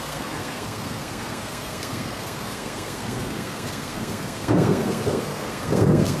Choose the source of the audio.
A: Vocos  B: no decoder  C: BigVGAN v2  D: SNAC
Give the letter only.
D